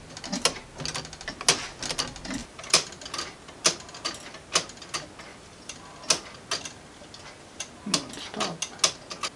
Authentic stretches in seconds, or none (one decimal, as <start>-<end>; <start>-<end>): 0.0-2.4; 2.9-5.3; 5.8-9.4